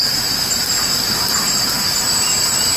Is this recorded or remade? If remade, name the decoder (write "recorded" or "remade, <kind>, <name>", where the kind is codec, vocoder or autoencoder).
remade, vocoder, BigVGAN v2